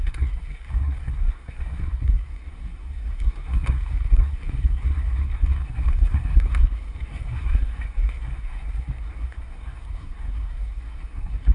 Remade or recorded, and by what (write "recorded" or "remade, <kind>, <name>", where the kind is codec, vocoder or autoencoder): remade, codec, SNAC